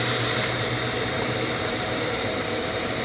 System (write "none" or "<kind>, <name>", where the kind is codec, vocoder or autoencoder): vocoder, BigVGAN v2